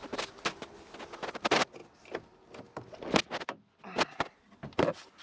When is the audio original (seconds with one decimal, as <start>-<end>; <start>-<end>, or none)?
0.0-5.2